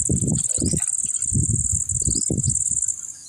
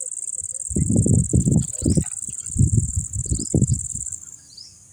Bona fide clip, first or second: first